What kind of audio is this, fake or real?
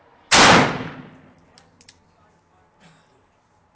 real